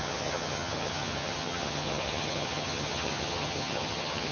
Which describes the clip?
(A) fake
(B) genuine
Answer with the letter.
A